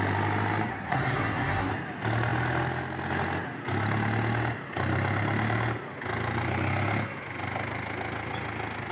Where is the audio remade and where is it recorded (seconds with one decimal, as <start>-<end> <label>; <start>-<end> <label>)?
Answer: 0.0-0.7 recorded; 0.7-1.7 remade; 1.7-8.9 recorded